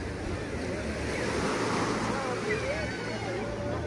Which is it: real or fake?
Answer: real